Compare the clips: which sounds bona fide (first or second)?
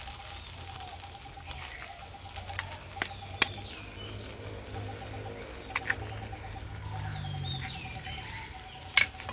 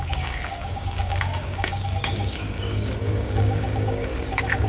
first